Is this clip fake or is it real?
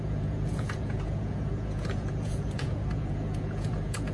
fake